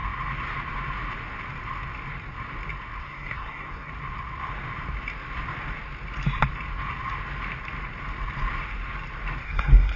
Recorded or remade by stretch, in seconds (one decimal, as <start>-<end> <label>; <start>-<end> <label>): 0.0-3.0 recorded; 3.0-3.9 remade; 3.9-9.4 recorded; 9.4-10.0 remade